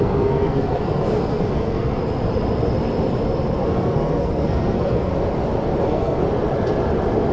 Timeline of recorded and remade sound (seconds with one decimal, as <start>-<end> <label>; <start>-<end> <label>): 0.0-2.0 remade; 2.0-3.6 recorded; 3.6-5.1 remade; 5.1-5.8 recorded; 5.8-6.2 remade; 6.2-7.3 recorded